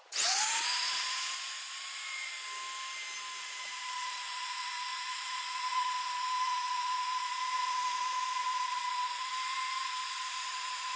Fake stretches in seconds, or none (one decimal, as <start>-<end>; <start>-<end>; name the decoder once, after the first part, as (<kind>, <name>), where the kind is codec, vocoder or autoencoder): 0.0-2.3 (vocoder, Vocos); 3.4-11.0